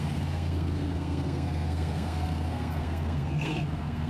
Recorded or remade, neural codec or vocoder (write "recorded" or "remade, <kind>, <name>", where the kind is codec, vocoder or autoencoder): remade, codec, SNAC